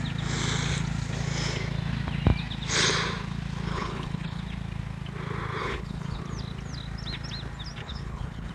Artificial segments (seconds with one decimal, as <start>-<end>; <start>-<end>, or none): 3.7-4.4; 5.6-6.2; 7.8-8.5